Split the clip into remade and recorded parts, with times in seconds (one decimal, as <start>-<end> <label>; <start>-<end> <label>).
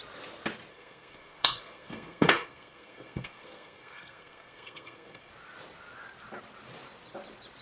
0.0-0.7 recorded; 0.7-5.3 remade; 5.3-7.6 recorded